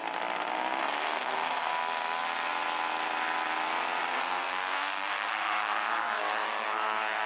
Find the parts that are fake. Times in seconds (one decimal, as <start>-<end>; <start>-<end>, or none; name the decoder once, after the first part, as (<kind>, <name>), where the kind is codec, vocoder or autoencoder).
0.8-1.8 (codec, SNAC); 4.0-7.3